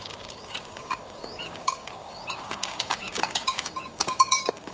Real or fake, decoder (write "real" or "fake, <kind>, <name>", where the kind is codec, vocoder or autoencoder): fake, codec, DAC